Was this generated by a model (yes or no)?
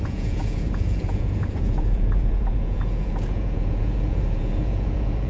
yes